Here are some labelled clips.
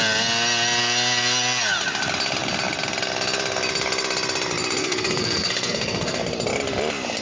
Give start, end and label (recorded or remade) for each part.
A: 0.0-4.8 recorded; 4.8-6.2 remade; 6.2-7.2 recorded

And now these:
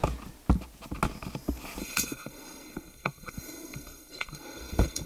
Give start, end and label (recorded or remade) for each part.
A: 0.0-1.8 recorded; 1.8-5.1 remade

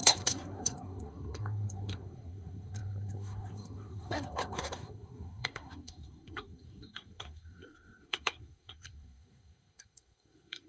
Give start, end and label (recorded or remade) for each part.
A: 0.0-10.7 remade

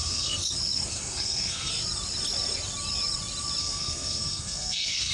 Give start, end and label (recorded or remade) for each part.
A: 0.0-0.5 remade; 0.5-0.9 recorded; 0.9-1.7 remade; 1.7-3.6 recorded; 3.6-5.1 remade